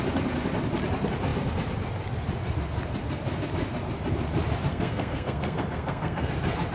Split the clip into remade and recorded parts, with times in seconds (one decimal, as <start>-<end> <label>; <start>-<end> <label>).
0.0-4.7 recorded; 4.7-6.3 remade; 6.3-6.7 recorded